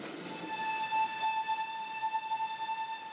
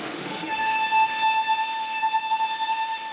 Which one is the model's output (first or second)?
second